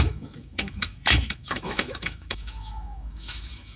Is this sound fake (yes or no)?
yes